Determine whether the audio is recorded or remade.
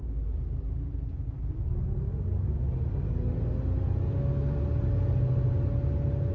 recorded